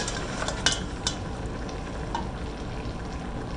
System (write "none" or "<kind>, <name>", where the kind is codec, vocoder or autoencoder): none